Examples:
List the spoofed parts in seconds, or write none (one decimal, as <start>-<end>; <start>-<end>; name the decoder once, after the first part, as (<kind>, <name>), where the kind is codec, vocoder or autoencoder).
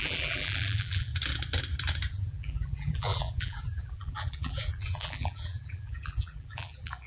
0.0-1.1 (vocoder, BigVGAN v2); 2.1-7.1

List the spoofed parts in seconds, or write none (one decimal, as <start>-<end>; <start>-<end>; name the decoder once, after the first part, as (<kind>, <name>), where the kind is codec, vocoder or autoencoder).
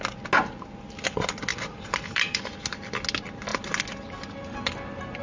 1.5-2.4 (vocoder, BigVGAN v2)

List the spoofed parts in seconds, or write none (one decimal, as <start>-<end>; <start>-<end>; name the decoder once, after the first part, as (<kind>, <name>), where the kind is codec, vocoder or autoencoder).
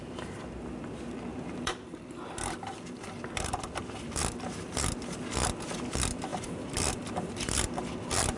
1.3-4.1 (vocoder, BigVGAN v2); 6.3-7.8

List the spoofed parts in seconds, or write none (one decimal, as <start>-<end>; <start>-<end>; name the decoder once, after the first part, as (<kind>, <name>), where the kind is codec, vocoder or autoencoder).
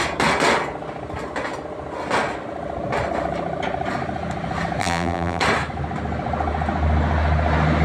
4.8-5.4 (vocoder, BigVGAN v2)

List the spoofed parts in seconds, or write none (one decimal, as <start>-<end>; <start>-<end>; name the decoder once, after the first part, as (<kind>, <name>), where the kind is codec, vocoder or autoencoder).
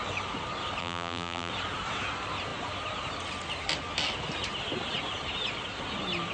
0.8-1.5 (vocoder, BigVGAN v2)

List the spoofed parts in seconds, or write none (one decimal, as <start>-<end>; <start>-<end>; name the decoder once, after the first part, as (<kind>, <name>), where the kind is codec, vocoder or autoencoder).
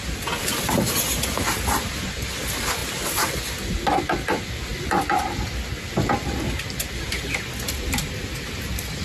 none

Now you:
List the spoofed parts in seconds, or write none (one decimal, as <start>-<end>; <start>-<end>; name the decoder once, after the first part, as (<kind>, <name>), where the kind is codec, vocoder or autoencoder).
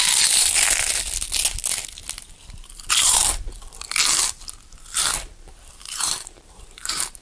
0.0-0.5 (vocoder, BigVGAN v2); 2.6-3.2; 5.3-7.2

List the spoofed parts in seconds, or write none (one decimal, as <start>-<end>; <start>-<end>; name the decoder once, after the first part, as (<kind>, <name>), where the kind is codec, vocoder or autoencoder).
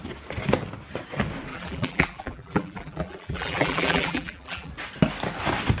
1.5-4.7 (vocoder, BigVGAN v2)